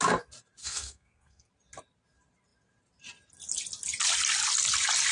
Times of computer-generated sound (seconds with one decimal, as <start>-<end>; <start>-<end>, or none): 0.6-1.5

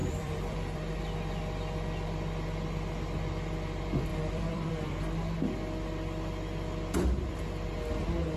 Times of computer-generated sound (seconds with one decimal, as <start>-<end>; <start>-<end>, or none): 0.0-1.0; 4.1-4.7